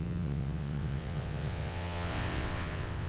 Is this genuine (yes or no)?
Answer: no